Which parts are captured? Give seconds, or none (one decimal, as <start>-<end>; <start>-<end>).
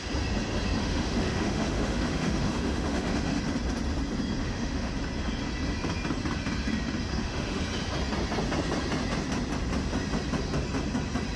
0.0-0.8; 3.4-4.4; 4.9-7.1; 7.6-11.4